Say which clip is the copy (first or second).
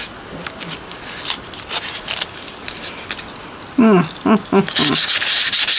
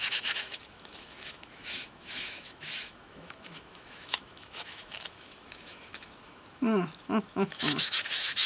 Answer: second